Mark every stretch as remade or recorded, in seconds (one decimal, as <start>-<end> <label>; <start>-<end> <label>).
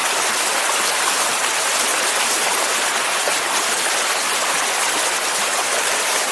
0.0-1.0 recorded; 1.0-1.9 remade; 1.9-5.3 recorded; 5.3-6.3 remade